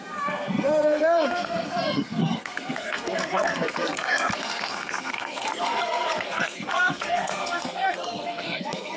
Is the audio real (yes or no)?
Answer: no